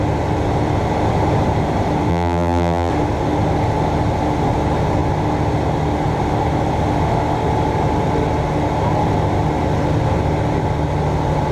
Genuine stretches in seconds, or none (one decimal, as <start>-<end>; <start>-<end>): 0.0-2.1; 2.9-11.5